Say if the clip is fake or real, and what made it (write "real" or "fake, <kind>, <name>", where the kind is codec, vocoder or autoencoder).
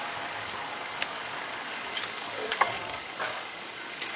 fake, codec, DAC